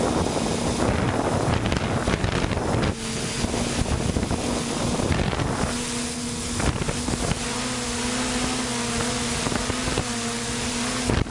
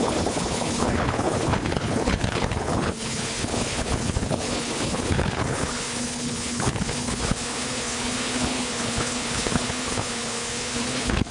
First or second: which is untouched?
first